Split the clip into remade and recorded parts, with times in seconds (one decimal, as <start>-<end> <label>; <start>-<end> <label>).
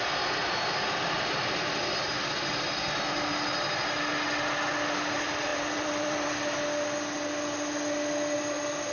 0.0-5.5 recorded; 5.5-6.3 remade; 6.3-8.9 recorded